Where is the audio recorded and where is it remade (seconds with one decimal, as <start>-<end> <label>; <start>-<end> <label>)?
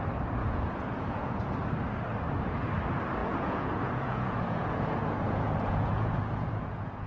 0.0-0.4 recorded; 0.4-1.6 remade; 1.6-3.2 recorded; 3.2-7.1 remade